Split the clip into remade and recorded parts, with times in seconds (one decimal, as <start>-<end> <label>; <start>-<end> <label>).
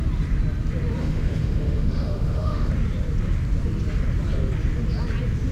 0.0-1.0 recorded; 1.0-2.7 remade; 2.7-5.5 recorded